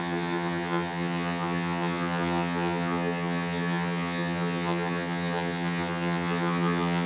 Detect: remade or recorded remade